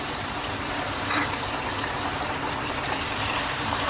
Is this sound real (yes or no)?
no